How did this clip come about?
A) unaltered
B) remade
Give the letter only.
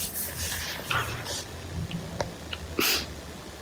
A